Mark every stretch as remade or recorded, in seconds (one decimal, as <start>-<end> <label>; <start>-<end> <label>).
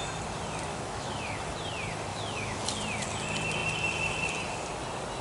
0.0-0.7 recorded; 0.7-1.4 remade; 1.4-2.1 recorded; 2.1-2.6 remade; 2.6-5.2 recorded